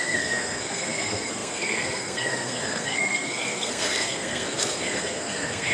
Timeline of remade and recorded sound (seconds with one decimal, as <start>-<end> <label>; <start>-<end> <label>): 0.0-5.7 remade